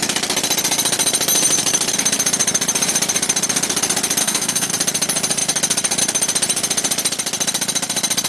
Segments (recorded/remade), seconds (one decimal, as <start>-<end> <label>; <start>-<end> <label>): 0.0-4.2 recorded; 4.2-4.7 remade; 4.7-8.3 recorded